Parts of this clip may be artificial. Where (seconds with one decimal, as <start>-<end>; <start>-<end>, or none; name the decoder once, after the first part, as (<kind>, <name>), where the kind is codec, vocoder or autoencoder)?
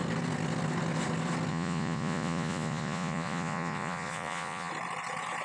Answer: 1.5-4.7 (vocoder, Vocos)